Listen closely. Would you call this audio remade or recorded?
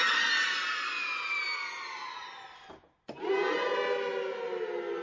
recorded